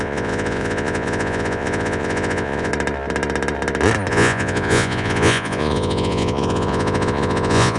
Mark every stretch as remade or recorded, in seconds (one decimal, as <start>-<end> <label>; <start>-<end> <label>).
0.0-2.7 remade; 2.7-4.1 recorded; 4.1-7.8 remade